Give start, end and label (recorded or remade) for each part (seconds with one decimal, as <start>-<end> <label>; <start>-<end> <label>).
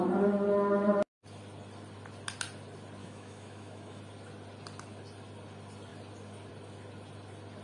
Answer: 0.0-3.0 recorded; 3.0-4.0 remade; 4.0-7.6 recorded